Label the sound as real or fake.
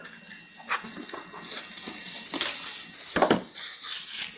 real